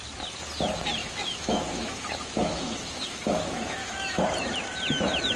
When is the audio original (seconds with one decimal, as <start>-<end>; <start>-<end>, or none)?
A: 0.0-1.0; 4.2-5.4